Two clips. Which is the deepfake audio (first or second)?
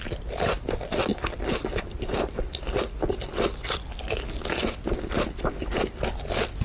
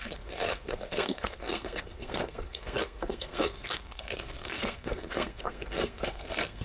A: second